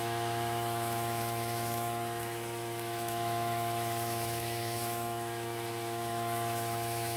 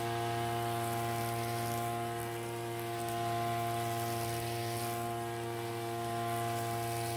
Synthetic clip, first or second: first